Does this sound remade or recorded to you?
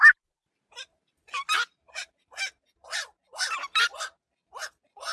recorded